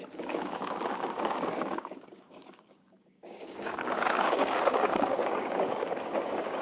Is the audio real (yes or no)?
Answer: no